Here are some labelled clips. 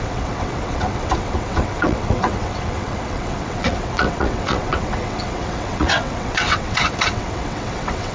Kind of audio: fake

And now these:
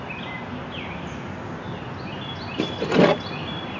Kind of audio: real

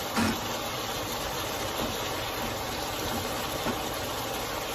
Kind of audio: real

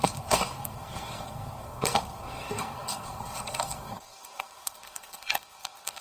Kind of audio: fake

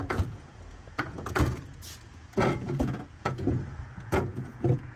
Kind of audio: fake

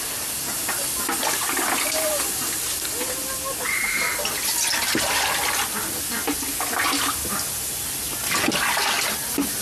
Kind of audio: real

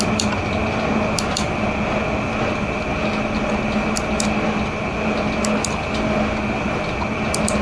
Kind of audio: real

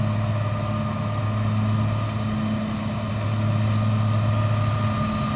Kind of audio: real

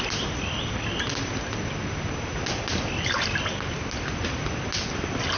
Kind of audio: real